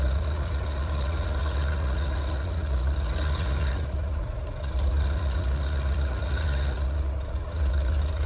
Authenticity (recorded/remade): remade